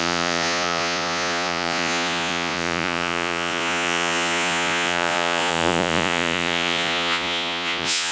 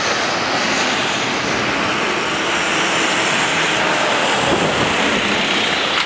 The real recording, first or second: second